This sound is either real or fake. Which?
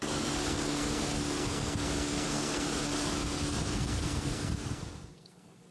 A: fake